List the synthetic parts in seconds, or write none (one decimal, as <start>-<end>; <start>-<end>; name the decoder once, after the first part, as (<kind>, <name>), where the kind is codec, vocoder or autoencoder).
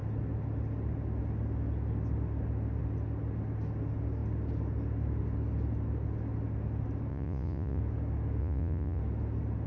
7.1-7.8 (vocoder, Vocos); 8.4-9.0